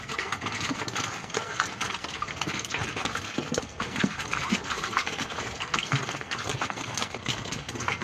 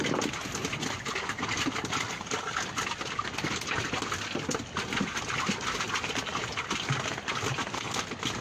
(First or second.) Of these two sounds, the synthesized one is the first